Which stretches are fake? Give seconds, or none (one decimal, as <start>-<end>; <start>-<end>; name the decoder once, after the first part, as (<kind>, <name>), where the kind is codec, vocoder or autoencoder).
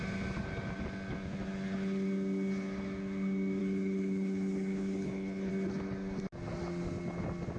3.6-5.5 (codec, HILCodec)